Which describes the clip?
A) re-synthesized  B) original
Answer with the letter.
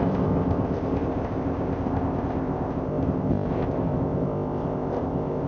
A